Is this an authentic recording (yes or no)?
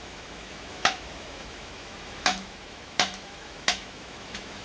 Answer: no